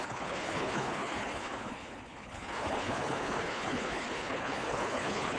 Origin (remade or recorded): remade